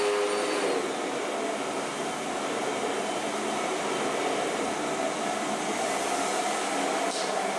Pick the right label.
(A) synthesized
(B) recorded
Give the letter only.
B